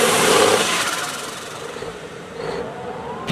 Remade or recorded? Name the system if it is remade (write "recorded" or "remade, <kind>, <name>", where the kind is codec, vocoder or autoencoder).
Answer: remade, vocoder, BigVGAN v2